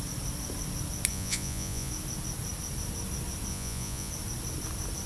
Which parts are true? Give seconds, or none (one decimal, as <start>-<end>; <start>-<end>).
0.0-1.1; 1.9-3.5; 4.1-5.1

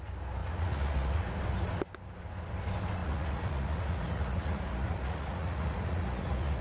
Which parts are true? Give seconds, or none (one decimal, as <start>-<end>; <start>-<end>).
0.0-0.4; 1.3-3.0

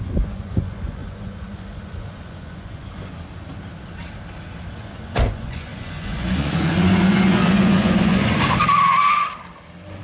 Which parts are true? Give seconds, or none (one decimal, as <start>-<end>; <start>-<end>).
3.1-4.8; 8.6-10.0

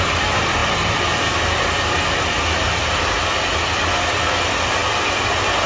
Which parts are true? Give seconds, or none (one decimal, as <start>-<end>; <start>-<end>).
0.0-5.7

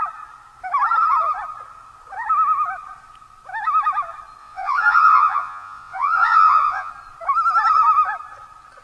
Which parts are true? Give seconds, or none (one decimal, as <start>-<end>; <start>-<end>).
0.0-4.4; 6.9-8.8